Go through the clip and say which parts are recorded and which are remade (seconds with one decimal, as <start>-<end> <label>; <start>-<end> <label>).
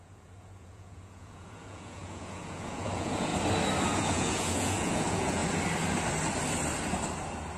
0.0-3.3 remade; 3.3-3.9 recorded; 3.9-5.4 remade; 5.4-7.6 recorded